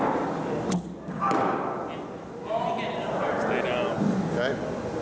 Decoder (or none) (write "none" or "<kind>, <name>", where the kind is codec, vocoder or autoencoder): none